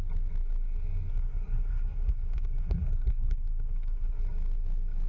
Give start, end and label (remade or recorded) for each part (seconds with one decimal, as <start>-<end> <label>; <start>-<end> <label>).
0.0-1.1 recorded; 1.1-4.2 remade; 4.2-5.1 recorded